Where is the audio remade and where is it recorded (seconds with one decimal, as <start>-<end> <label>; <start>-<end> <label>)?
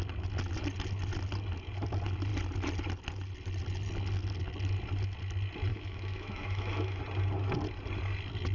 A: 0.0-5.7 recorded; 5.7-7.0 remade; 7.0-8.5 recorded